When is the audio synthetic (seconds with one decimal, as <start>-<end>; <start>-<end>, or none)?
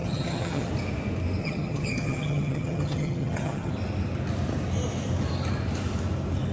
0.0-0.7; 1.4-3.7